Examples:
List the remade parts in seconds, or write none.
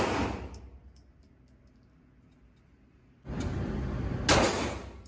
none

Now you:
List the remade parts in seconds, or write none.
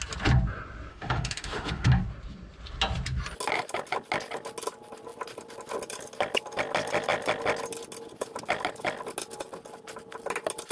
0.9-2.0 (autoencoder, DAC-VAE)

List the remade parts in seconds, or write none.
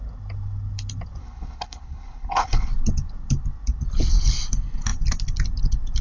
1.2-2.7 (codec, HILCodec)